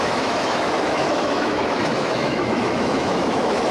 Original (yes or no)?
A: no